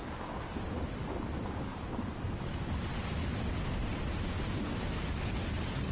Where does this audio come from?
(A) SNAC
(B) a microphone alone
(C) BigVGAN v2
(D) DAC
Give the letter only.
B